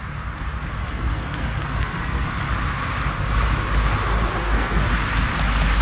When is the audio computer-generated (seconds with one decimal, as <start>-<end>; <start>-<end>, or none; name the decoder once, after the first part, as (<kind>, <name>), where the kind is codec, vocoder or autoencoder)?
0.8-2.5 (codec, SNAC); 4.4-4.9